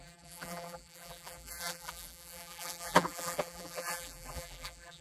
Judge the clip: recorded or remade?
remade